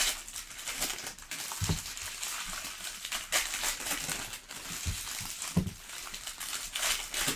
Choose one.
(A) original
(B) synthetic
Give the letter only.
A